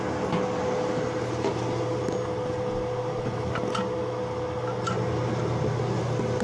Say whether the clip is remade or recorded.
recorded